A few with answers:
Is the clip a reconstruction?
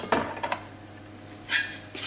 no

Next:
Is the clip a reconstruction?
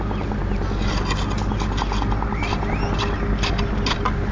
no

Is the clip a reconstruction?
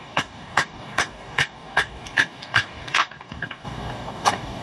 yes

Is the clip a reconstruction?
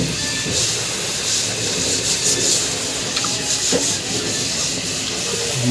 no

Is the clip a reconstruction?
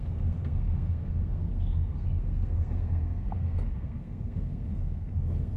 yes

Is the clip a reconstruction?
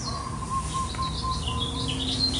no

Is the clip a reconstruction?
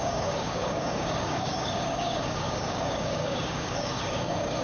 yes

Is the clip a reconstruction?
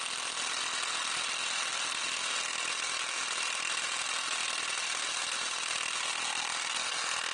no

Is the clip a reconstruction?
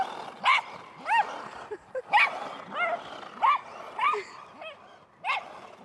no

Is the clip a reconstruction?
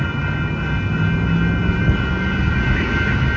no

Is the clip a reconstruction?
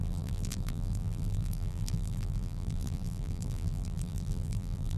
yes